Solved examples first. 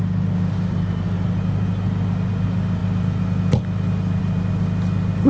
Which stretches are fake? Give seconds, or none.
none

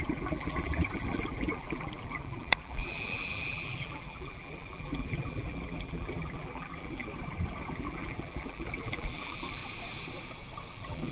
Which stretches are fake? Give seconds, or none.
0.0-7.0 (vocoder, BigVGAN v2); 7.7-9.6; 10.7-11.1

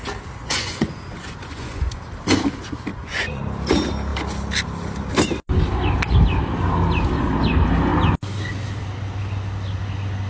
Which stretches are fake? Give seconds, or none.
0.4-2.0 (vocoder, Vocos); 2.9-3.4

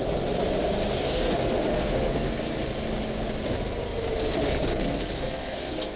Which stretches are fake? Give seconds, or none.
1.1-2.3 (codec, SNAC); 4.7-6.0

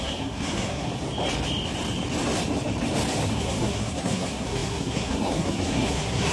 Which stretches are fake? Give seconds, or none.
0.0-0.9 (codec, SNAC); 3.3-6.3